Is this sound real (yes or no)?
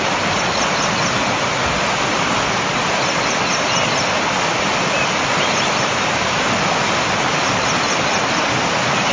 yes